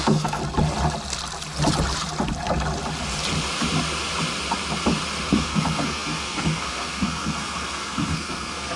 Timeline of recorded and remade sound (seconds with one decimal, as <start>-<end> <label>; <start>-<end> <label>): 0.0-0.4 remade; 0.4-5.3 recorded; 5.3-8.8 remade